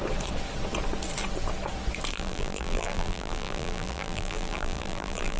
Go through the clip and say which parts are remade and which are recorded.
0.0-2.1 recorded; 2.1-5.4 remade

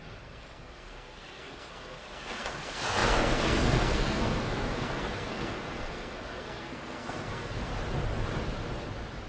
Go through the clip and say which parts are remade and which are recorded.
0.0-7.7 remade; 7.7-9.3 recorded